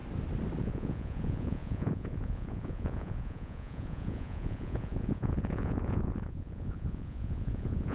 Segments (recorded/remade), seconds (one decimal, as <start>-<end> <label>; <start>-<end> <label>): 0.0-0.6 recorded; 0.6-7.9 remade